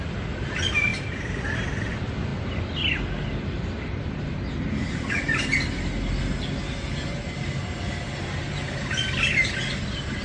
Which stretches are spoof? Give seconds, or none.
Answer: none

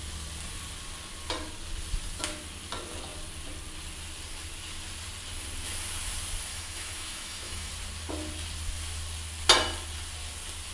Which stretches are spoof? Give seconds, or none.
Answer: 6.5-7.7 (autoencoder, DAC-VAE)

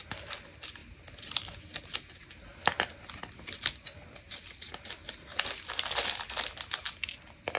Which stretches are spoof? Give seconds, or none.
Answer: none

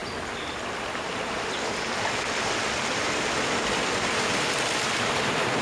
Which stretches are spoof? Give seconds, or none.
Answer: none

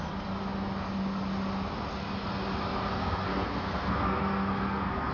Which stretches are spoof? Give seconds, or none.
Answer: 3.0-5.1 (codec, SNAC)

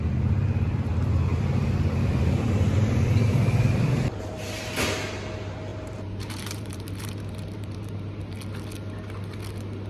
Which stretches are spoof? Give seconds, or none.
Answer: 1.3-4.7 (vocoder, BigVGAN v2); 5.7-8.2

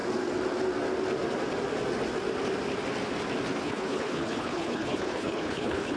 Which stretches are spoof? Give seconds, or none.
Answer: 3.6-6.0 (codec, HILCodec)

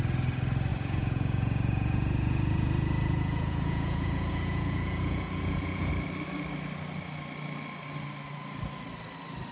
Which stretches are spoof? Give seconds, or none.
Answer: 0.7-5.9 (vocoder, Vocos)